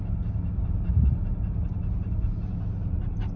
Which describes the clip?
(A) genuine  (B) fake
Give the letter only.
A